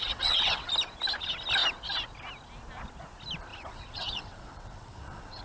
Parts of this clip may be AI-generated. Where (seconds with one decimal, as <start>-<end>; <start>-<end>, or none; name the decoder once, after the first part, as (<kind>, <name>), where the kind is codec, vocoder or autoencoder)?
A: 0.0-0.7 (vocoder, WaveNeXt); 3.5-5.4